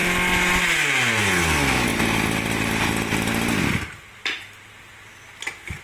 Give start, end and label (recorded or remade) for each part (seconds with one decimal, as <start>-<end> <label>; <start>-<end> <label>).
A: 0.0-5.8 recorded